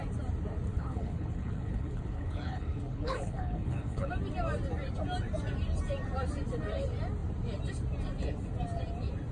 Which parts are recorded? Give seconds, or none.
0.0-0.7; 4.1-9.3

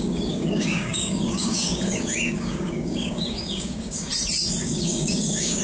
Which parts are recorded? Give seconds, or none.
4.1-4.6

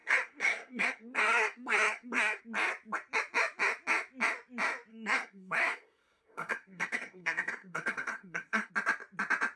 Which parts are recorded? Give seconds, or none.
2.4-4.9; 8.7-9.6

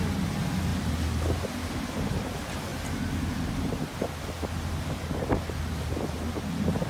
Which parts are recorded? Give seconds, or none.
0.0-6.9

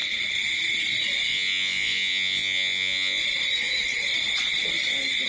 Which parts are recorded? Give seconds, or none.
0.0-1.3; 3.2-5.3

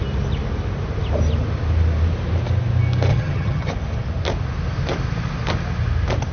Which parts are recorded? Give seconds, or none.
0.0-3.1; 3.7-6.3

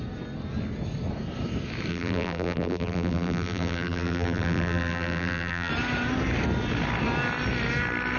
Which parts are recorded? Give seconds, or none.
0.0-1.9; 5.7-8.2

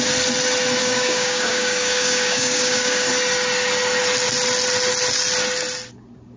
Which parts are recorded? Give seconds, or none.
0.0-0.8; 3.1-6.4